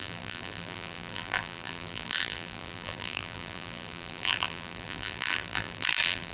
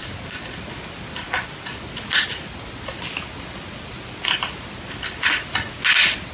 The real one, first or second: second